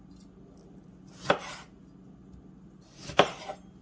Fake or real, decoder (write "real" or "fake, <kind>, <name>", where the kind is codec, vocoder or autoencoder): real